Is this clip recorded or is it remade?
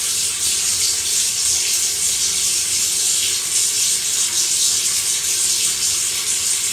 recorded